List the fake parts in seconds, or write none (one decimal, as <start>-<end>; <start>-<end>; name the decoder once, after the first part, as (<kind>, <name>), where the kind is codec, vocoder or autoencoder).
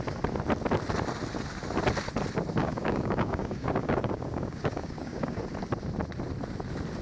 2.6-5.4 (codec, DAC)